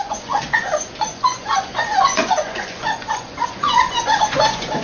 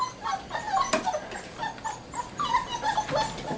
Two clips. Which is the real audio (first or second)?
second